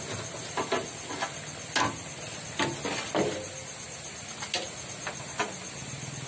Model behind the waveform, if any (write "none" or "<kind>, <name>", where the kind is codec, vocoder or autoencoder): none